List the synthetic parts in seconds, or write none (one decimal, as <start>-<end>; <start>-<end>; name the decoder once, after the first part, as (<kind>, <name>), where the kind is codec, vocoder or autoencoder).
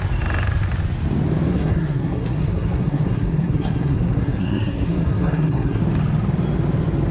1.5-5.8 (codec, SNAC)